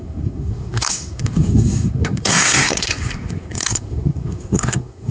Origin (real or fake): fake